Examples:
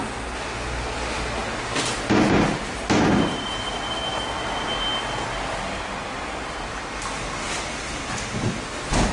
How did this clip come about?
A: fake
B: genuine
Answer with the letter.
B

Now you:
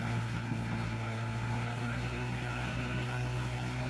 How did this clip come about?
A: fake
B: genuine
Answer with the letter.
A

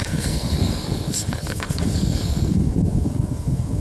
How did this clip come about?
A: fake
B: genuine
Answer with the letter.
A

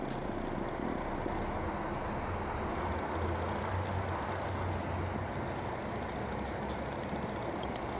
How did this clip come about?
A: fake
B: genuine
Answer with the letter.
B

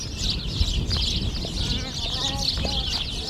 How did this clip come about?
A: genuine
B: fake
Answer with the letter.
A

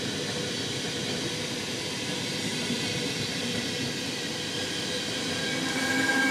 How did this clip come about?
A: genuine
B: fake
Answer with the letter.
A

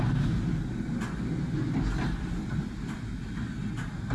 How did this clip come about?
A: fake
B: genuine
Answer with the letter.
B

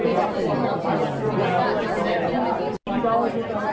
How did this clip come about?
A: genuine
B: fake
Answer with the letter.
A